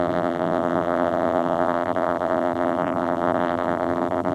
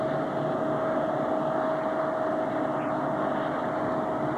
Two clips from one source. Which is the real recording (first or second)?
second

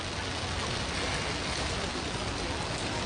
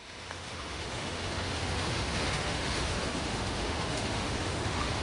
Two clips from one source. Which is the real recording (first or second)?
first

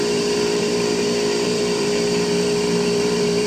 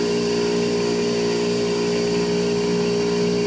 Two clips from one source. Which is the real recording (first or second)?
second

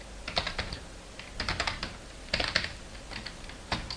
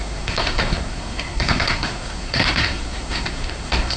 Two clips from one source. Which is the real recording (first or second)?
first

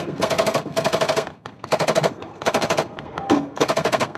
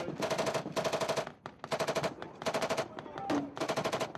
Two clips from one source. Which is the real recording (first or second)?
second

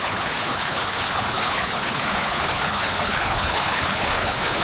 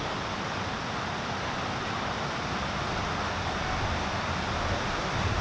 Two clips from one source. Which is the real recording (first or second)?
second